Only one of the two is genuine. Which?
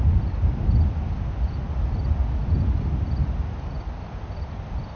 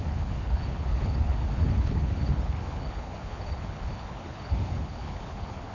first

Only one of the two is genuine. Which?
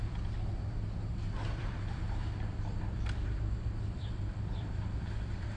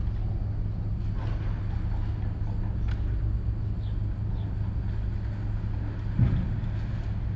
second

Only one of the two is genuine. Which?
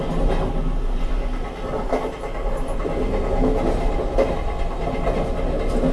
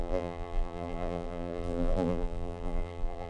first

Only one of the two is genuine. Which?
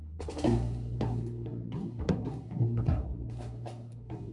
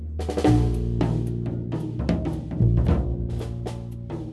second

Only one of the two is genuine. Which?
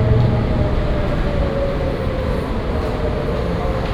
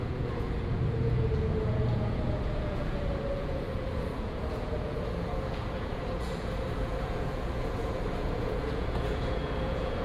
first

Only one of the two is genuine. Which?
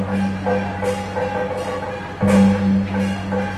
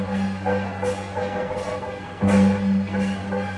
first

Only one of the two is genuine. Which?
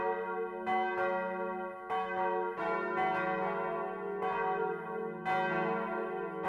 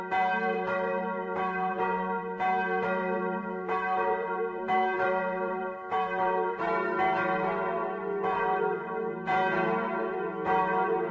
first